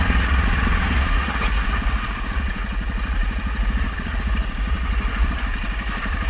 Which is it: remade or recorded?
remade